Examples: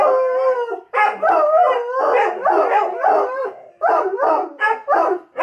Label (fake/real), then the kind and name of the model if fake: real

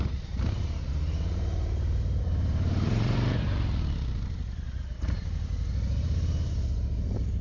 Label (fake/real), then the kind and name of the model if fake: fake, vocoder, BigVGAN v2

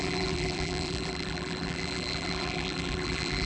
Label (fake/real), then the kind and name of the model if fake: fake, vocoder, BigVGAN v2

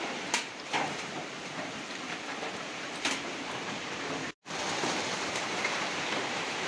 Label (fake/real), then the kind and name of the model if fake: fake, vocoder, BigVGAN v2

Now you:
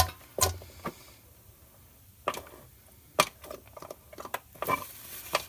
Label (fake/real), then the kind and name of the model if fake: real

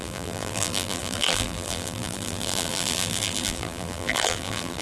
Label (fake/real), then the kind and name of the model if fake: fake, vocoder, BigVGAN v2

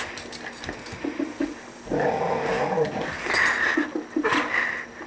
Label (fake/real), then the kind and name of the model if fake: real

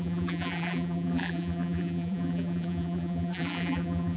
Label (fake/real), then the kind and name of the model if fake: fake, vocoder, BigVGAN v2